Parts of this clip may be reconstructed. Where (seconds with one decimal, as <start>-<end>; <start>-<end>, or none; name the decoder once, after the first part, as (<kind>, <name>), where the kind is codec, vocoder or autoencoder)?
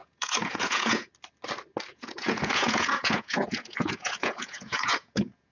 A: 0.0-1.1 (vocoder, Vocos); 1.9-5.5